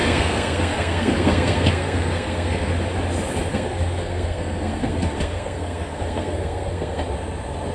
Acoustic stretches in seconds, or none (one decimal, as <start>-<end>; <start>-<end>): 2.7-3.5; 7.0-7.7